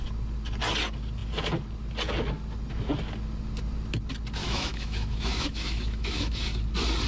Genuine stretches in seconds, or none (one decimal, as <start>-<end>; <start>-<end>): 0.0-4.4; 6.4-7.1